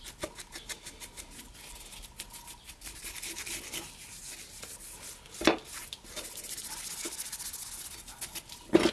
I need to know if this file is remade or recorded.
recorded